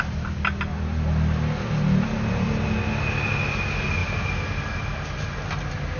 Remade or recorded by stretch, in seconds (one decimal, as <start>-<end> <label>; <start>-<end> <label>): 0.0-6.0 recorded